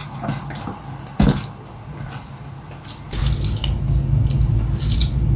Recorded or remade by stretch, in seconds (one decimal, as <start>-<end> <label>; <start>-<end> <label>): 0.0-5.4 recorded